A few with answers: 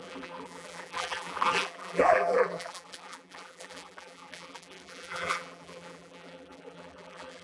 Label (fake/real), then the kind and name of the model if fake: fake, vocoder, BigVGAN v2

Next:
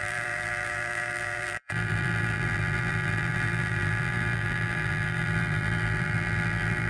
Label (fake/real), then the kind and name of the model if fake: fake, vocoder, BigVGAN v2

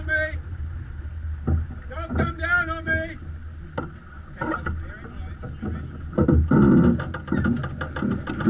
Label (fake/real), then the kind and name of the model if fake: real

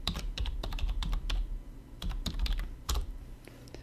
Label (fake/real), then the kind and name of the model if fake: fake, vocoder, BigVGAN v2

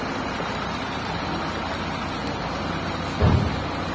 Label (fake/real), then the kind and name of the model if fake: real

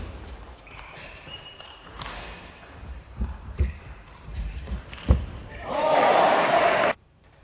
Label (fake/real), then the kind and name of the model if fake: fake, vocoder, BigVGAN v2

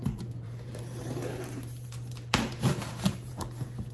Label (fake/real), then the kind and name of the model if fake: fake, vocoder, BigVGAN v2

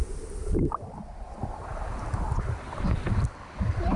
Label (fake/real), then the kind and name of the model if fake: fake, vocoder, BigVGAN v2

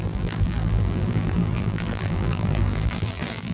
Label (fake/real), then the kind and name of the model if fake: fake, vocoder, BigVGAN v2